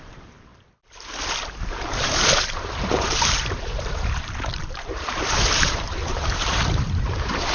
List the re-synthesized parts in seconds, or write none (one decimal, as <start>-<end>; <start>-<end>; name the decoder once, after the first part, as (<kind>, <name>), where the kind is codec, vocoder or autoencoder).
0.0-0.5 (vocoder, BigVGAN v2); 1.6-7.5